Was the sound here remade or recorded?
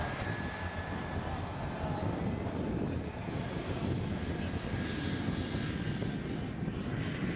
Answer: recorded